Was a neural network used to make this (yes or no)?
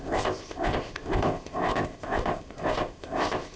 yes